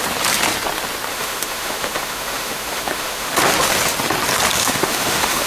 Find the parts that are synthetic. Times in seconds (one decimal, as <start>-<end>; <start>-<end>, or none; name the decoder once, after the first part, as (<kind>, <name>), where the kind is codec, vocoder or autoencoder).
1.1-3.3 (autoencoder, DAC-VAE); 4.6-5.5